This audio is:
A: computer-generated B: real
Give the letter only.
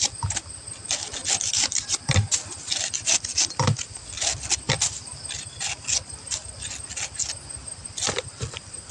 B